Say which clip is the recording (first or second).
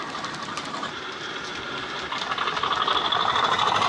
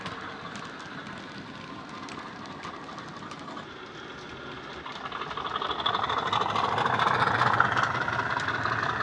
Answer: second